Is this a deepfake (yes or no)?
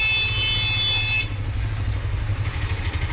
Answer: no